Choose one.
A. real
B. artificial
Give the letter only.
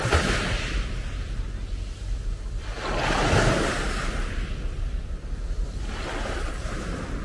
A